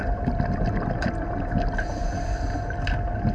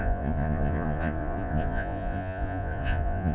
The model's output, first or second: second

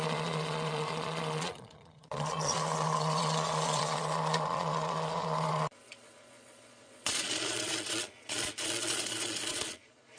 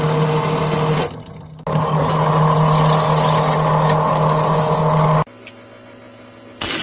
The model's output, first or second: first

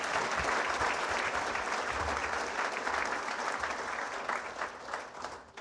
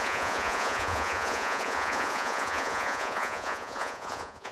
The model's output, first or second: second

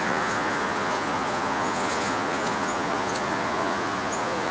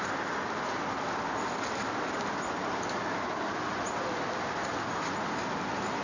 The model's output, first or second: first